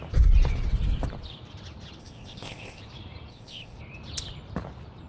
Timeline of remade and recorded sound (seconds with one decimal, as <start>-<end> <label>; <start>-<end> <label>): 0.0-2.0 recorded; 2.0-2.8 remade; 2.8-3.3 recorded; 3.3-3.8 remade; 3.8-5.1 recorded